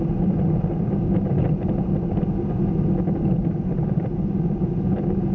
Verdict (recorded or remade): recorded